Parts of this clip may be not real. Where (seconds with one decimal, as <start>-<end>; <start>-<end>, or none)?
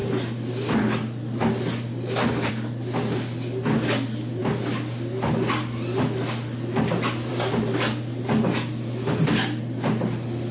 none